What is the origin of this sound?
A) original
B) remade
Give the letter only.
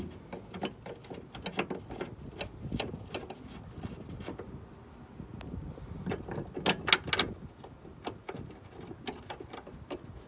A